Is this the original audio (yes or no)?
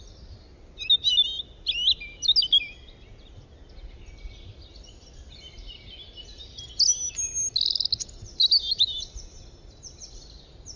yes